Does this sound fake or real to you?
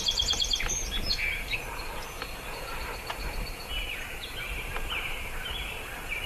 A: fake